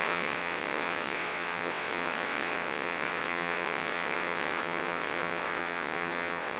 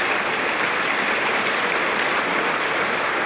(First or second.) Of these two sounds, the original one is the second